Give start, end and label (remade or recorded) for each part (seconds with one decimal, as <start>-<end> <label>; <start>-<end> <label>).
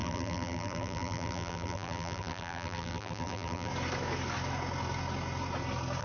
0.0-3.7 remade; 3.7-6.0 recorded